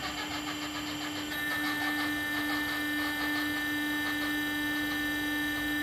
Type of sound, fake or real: real